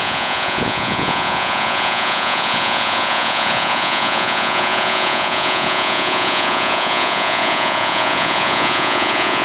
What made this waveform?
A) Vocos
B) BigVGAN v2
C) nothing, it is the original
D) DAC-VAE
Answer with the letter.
A